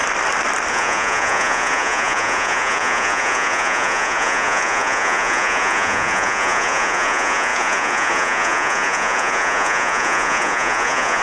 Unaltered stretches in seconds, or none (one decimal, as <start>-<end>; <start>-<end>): 0.0-0.7